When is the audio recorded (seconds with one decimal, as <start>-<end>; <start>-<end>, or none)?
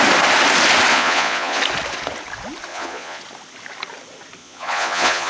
0.0-0.9; 1.6-2.7; 3.2-4.4